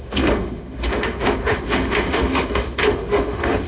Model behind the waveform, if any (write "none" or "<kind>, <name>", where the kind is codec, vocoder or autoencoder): autoencoder, DAC-VAE